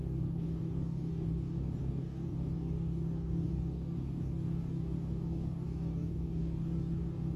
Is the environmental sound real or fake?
fake